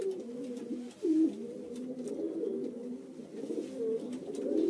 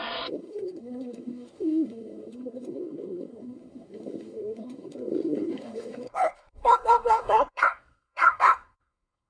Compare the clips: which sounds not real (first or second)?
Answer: second